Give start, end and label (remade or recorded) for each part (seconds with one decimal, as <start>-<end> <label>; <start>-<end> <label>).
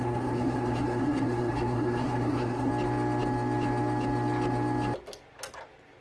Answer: 0.0-2.7 remade; 2.7-6.0 recorded